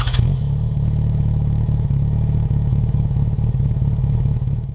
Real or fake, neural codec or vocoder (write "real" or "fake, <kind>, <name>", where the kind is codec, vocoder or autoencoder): fake, autoencoder, DAC-VAE